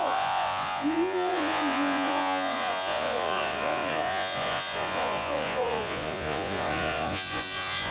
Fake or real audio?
fake